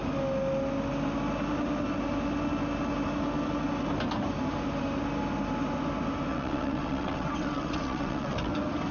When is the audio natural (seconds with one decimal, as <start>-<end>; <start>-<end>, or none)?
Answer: 0.0-6.3; 8.5-8.9